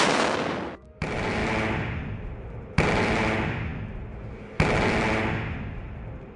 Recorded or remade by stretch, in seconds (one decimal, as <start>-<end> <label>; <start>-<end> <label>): 0.0-3.7 remade; 3.7-5.7 recorded; 5.7-6.4 remade